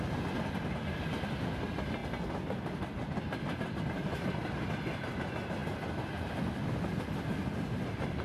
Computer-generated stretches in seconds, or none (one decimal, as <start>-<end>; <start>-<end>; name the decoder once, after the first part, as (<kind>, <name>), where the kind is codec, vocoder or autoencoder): 5.6-6.6 (vocoder, BigVGAN v2)